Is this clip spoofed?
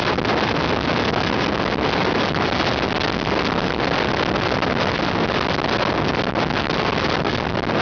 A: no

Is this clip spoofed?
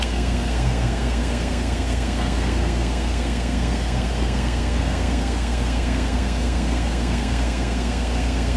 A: yes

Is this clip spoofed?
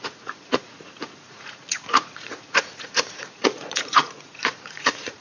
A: yes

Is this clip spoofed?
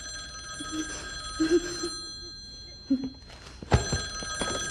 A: no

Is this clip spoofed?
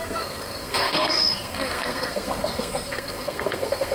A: yes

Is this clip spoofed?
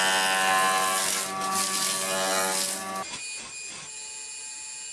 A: no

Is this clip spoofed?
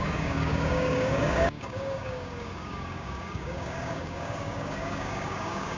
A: yes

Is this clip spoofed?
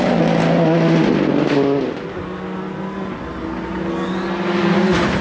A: no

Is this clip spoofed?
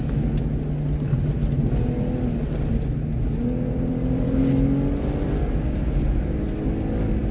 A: no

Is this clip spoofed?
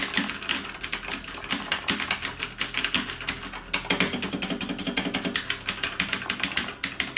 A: no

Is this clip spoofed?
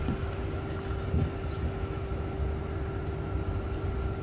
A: no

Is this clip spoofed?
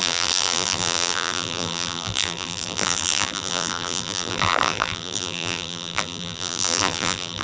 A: yes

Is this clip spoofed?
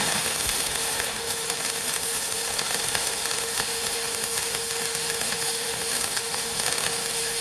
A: yes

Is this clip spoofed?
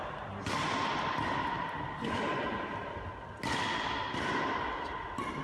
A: no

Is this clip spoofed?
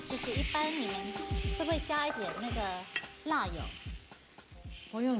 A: no